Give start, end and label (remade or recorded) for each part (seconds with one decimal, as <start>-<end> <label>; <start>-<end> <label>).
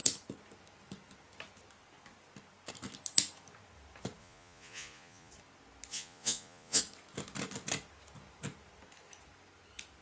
0.0-4.2 recorded; 4.2-5.3 remade; 5.3-5.9 recorded; 5.9-6.8 remade; 6.8-10.0 recorded